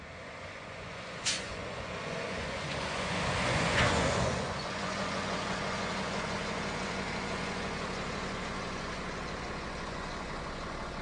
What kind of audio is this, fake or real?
fake